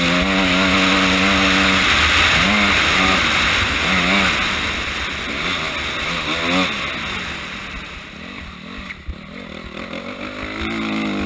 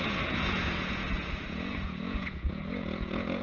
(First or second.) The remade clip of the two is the second